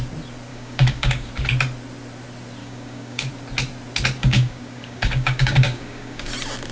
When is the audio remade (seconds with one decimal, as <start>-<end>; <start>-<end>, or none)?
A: 0.5-1.3; 2.6-3.3; 4.2-6.3